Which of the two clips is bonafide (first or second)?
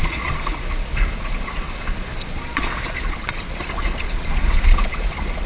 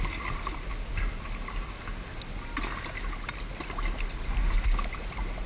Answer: second